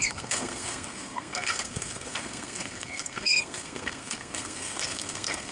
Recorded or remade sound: remade